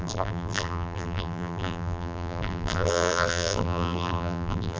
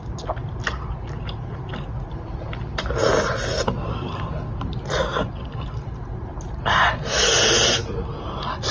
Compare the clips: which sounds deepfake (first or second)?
first